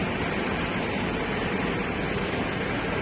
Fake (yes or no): no